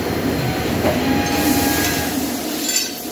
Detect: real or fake real